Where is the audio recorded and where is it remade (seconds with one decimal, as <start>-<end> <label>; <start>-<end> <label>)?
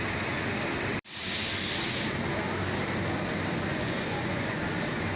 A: 0.0-3.7 recorded; 3.7-4.6 remade; 4.6-5.2 recorded